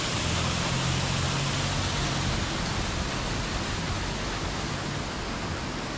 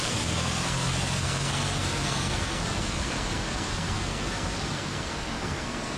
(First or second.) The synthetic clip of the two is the second